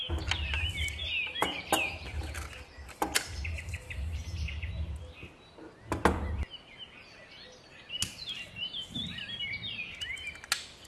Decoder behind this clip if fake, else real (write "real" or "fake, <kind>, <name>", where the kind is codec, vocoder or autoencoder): real